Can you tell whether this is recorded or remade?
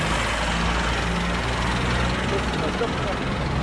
recorded